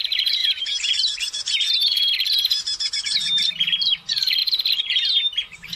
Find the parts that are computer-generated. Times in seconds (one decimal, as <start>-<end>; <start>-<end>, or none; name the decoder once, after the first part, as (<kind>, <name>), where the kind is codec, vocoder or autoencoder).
0.0-5.8 (vocoder, BigVGAN v2)